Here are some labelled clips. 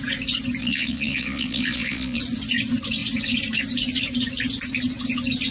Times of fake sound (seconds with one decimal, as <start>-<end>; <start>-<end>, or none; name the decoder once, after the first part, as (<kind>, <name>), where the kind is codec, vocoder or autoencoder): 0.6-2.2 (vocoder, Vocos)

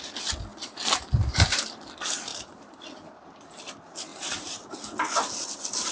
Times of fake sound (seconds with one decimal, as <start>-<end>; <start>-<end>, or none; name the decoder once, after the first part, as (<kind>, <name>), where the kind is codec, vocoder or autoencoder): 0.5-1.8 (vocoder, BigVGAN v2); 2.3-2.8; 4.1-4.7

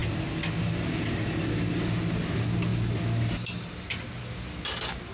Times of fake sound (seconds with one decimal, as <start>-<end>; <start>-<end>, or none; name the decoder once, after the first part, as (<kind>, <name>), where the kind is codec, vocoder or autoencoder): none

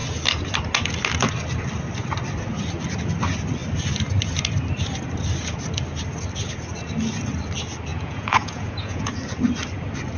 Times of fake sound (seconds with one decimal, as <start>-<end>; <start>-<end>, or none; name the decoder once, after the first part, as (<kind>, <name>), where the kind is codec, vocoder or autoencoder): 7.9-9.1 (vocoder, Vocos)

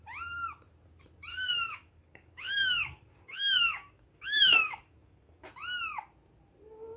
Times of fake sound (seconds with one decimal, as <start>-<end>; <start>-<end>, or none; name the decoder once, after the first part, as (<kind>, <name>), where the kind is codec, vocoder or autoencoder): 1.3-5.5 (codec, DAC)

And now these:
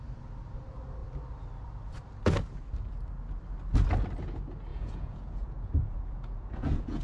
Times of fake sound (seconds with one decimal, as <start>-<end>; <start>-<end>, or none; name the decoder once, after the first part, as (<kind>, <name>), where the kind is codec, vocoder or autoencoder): 4.7-7.0 (vocoder, Vocos)